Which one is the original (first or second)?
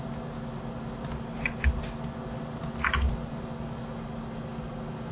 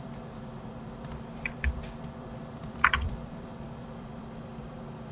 first